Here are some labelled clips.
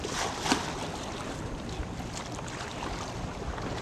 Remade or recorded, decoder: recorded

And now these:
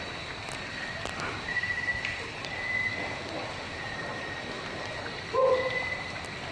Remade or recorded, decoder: recorded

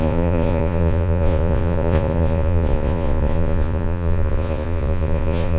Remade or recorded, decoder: remade, vocoder, Vocos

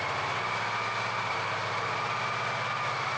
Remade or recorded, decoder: recorded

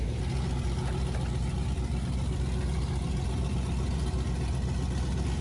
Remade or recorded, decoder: recorded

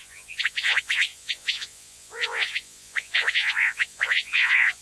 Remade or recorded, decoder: remade, vocoder, Vocos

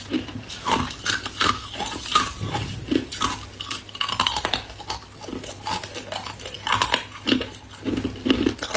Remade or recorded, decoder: recorded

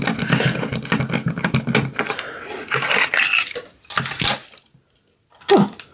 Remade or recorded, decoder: recorded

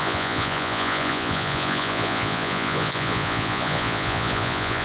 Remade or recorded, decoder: remade, vocoder, Vocos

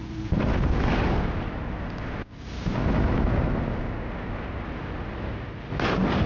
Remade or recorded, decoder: recorded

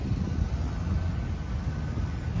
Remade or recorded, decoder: recorded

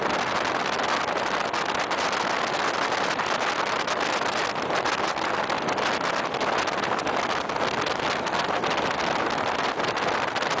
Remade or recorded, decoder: recorded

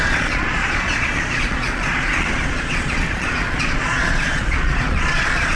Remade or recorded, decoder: remade, vocoder, Vocos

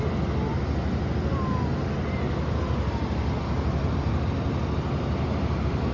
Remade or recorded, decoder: recorded